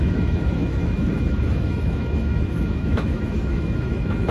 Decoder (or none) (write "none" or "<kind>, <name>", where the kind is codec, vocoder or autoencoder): autoencoder, DAC-VAE